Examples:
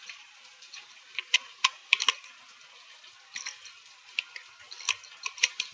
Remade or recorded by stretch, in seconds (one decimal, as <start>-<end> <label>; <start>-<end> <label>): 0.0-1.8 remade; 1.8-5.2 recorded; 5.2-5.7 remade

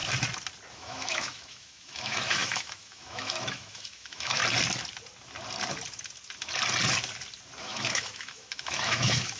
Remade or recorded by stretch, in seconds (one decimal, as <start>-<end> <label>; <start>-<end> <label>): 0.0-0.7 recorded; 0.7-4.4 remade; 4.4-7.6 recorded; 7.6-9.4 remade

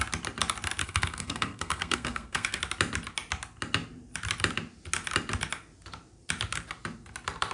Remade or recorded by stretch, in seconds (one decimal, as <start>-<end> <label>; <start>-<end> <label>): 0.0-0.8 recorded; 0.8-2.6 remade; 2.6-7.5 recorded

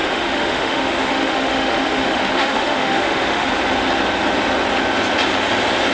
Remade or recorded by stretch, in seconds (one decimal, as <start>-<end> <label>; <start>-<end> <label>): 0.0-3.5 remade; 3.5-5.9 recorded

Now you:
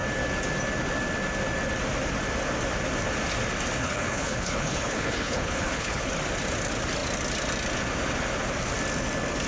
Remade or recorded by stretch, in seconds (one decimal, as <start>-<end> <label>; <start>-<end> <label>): 0.0-3.8 recorded; 3.8-6.1 remade; 6.1-9.5 recorded